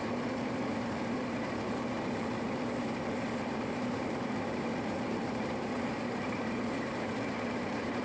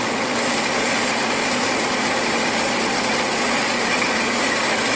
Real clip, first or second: second